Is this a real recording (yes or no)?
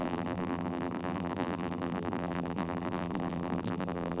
no